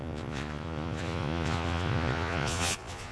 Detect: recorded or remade remade